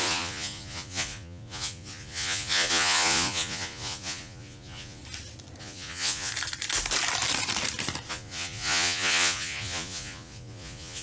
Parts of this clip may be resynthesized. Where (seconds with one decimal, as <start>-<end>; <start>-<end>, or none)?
0.0-5.0; 5.6-6.3; 8.1-11.0